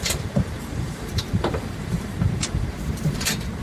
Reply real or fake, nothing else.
fake